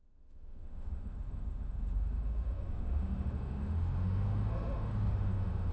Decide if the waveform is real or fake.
fake